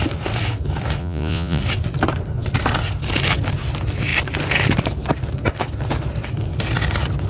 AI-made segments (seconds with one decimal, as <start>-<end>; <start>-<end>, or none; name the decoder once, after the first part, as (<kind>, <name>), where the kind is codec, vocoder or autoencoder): 1.0-1.6 (vocoder, Vocos)